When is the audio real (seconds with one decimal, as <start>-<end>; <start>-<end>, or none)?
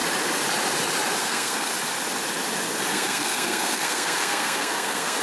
0.0-1.2; 1.7-2.9